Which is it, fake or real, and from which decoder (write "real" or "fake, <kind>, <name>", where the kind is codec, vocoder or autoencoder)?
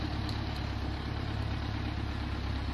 real